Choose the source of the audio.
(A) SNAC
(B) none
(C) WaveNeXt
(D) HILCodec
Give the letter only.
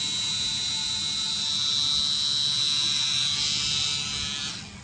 B